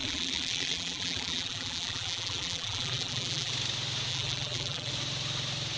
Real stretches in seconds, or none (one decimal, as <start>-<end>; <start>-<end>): 3.5-4.1; 4.9-5.8